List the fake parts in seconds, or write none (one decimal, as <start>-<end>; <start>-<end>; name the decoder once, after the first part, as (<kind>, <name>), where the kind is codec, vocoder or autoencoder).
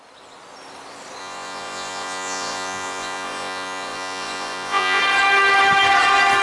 1.2-5.0 (vocoder, Vocos)